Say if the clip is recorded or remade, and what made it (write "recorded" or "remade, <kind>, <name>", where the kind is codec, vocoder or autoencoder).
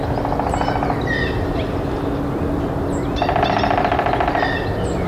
recorded